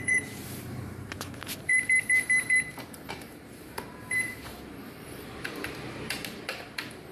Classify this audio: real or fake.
fake